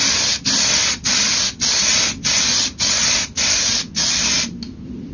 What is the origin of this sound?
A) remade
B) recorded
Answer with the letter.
B